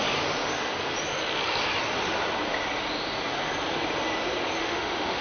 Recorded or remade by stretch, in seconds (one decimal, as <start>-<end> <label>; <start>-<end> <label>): 0.0-4.6 recorded; 4.6-5.2 remade